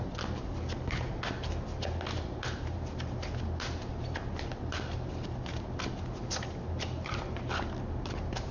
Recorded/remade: recorded